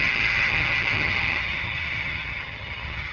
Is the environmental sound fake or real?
fake